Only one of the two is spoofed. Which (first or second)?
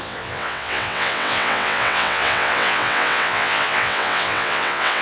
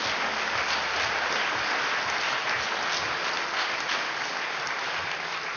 first